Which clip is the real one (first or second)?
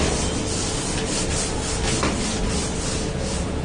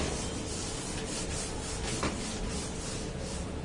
first